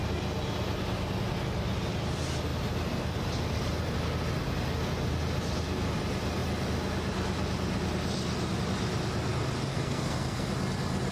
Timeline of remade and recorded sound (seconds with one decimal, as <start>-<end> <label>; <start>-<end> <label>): 0.0-9.7 recorded; 9.7-10.5 remade; 10.5-11.1 recorded